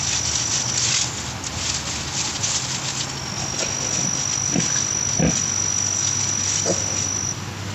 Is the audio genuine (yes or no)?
yes